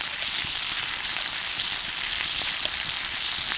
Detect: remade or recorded recorded